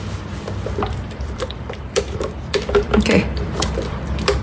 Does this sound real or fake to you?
fake